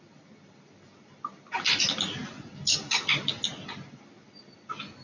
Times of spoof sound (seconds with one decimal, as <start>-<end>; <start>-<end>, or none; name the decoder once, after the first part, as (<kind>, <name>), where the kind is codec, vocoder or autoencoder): none